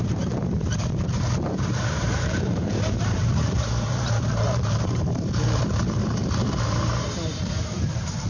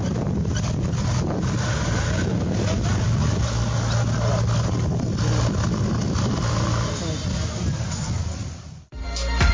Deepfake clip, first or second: first